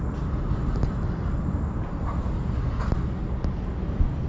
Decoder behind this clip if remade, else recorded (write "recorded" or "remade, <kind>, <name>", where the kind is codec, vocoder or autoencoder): recorded